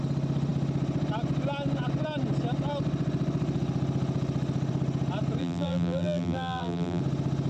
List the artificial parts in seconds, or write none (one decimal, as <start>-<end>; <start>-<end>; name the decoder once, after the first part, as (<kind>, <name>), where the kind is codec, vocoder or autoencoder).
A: 5.4-7.0 (vocoder, BigVGAN v2)